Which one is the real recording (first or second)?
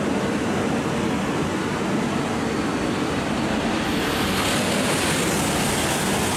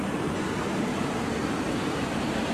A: first